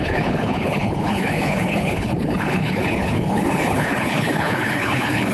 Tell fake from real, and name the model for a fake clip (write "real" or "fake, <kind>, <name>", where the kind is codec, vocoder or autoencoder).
fake, codec, HILCodec